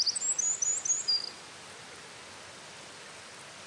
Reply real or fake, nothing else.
real